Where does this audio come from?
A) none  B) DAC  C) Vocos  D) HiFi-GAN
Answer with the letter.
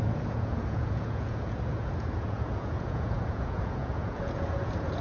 C